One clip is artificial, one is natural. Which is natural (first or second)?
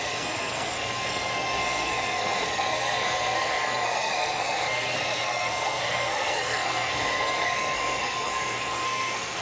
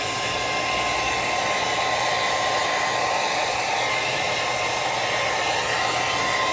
second